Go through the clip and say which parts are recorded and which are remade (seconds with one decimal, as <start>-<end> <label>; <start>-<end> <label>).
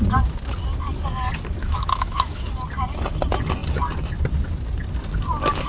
0.0-1.6 recorded; 1.6-2.5 remade; 2.5-5.7 recorded